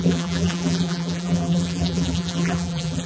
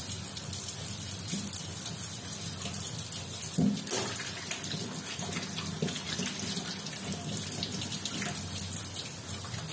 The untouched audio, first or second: second